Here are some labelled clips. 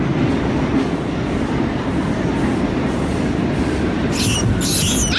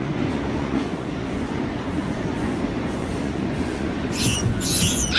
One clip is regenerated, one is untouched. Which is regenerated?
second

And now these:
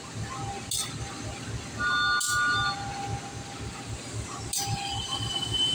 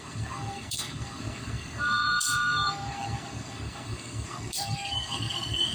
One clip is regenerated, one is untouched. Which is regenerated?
second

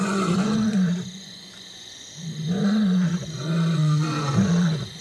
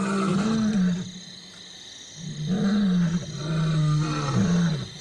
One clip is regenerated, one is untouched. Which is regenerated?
first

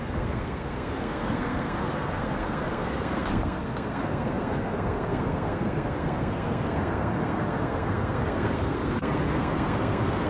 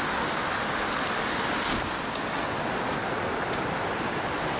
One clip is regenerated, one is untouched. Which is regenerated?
first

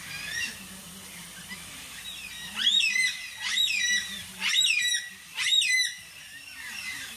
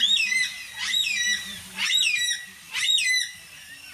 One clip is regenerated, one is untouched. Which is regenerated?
first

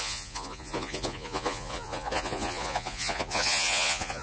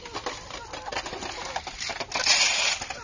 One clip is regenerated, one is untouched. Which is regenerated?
first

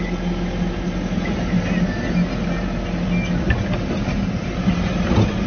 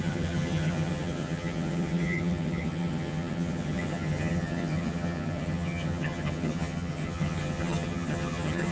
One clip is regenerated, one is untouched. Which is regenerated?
second